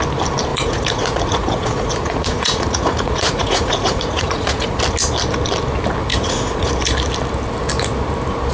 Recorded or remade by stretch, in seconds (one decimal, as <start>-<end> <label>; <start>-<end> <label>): 0.0-0.5 recorded; 0.5-4.8 remade; 4.8-6.1 recorded; 6.1-6.7 remade; 6.7-8.5 recorded